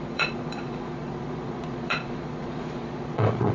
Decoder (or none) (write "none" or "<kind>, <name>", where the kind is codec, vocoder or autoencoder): vocoder, Vocos